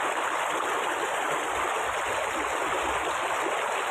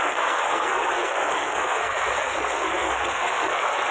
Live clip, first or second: first